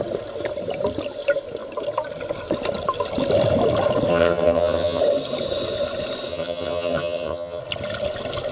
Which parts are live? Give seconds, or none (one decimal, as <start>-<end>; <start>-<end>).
0.0-4.1; 5.0-6.3; 7.6-8.5